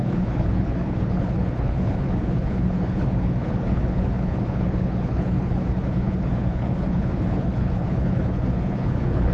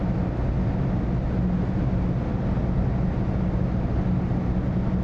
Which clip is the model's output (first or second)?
first